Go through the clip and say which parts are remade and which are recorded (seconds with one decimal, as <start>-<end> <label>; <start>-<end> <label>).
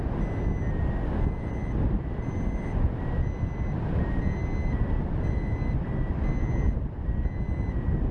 0.0-8.1 recorded